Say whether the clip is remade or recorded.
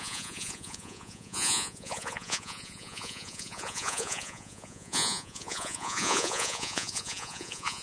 remade